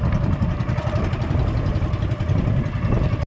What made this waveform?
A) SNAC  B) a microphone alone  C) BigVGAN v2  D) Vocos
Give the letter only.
B